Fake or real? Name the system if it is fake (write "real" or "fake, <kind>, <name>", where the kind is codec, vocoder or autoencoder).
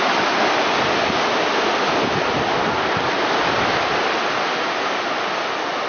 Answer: real